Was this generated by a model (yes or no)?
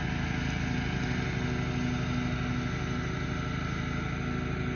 no